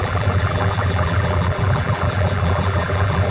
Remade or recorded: remade